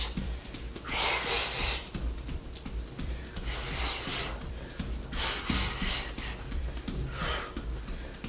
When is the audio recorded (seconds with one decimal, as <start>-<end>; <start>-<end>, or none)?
0.0-8.3